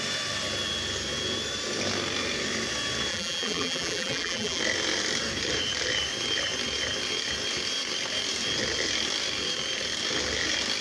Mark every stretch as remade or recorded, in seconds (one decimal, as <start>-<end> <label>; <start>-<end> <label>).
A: 0.0-3.1 recorded; 3.1-4.6 remade; 4.6-10.8 recorded